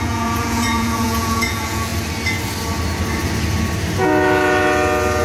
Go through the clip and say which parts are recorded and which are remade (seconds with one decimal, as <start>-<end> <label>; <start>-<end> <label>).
0.0-1.9 remade; 1.9-5.2 recorded